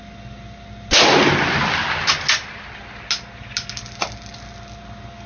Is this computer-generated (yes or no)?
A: no